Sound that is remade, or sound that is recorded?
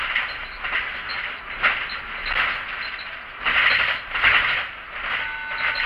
recorded